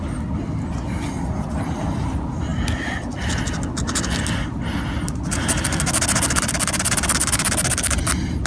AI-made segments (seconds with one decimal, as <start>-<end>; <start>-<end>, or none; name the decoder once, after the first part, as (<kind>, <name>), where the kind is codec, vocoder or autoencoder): none